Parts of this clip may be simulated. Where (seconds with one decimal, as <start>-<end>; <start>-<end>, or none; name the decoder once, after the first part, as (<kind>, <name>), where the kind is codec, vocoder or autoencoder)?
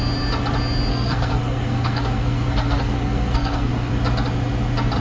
0.9-3.9 (codec, SNAC)